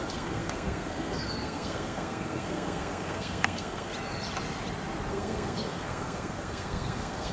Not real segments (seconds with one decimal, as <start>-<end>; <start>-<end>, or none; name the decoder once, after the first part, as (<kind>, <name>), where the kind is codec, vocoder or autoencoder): 0.0-3.9 (codec, SNAC); 5.1-7.3